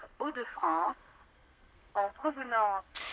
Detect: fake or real fake